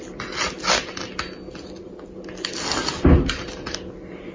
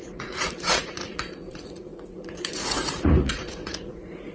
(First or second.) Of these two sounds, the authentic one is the first